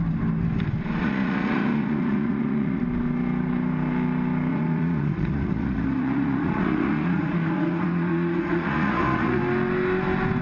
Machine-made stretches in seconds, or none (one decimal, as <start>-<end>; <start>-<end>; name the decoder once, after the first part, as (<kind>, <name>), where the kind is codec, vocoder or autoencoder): 1.0-2.8 (vocoder, Vocos); 4.5-9.4